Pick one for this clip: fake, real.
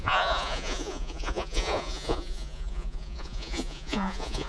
fake